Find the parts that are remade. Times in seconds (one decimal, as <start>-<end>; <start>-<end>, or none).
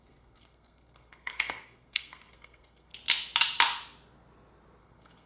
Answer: 0.0-2.9; 4.8-5.3